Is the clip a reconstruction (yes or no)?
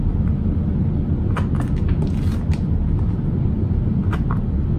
no